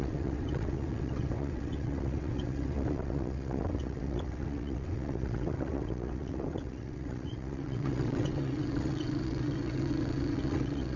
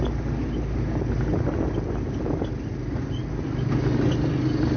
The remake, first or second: first